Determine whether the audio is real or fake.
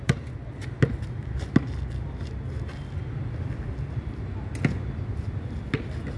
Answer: real